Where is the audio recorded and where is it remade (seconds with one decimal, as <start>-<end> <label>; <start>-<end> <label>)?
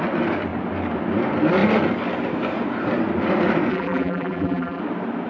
0.0-3.7 recorded; 3.7-4.8 remade; 4.8-5.3 recorded